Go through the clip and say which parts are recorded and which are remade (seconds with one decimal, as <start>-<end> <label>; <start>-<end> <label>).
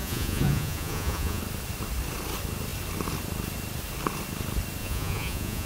0.0-1.4 remade; 1.4-4.8 recorded; 4.8-5.7 remade